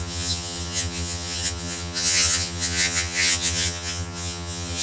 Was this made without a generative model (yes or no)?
no